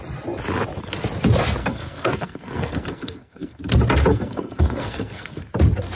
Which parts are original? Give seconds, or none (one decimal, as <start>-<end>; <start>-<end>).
0.0-1.6; 3.6-4.1; 5.5-6.0